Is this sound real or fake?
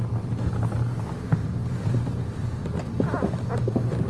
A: fake